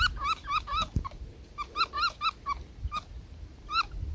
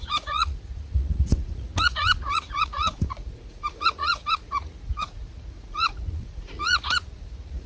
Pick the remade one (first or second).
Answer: second